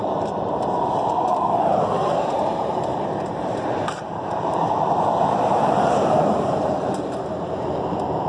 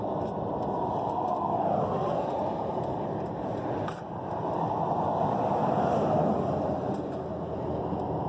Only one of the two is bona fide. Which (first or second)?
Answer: second